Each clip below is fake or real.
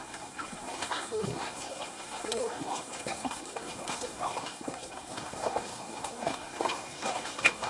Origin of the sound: fake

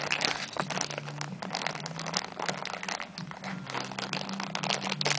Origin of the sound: real